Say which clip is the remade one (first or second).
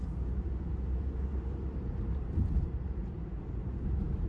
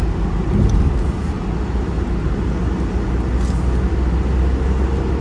first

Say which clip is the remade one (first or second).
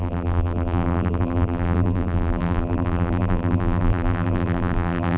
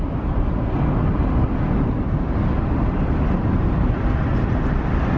first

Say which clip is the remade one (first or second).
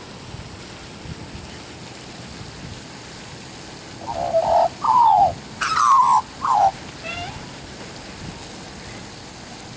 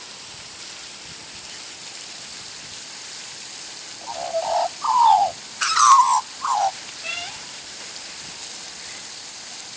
second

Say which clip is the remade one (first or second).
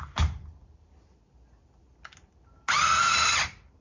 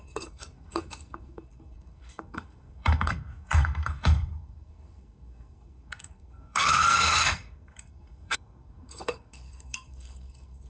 second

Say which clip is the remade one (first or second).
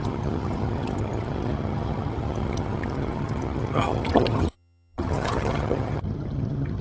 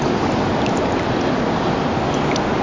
first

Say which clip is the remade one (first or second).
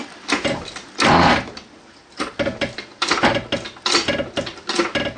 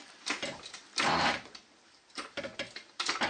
second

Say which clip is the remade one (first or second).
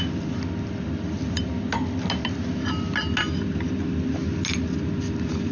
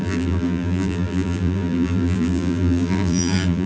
second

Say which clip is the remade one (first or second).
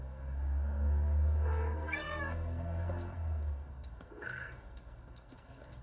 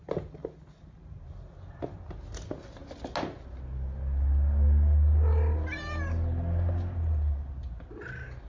first